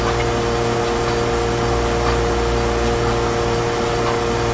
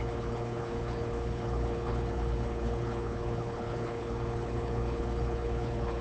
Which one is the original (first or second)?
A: first